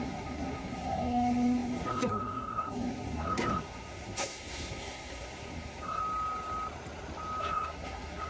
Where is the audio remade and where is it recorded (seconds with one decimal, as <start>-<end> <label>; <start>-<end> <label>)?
0.0-6.0 remade; 6.0-7.4 recorded; 7.4-8.3 remade